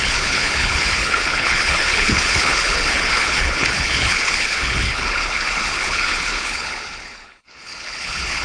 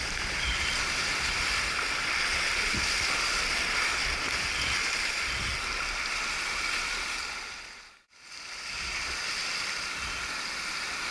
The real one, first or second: second